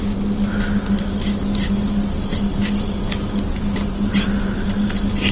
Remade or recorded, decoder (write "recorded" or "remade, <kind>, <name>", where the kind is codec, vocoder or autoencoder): recorded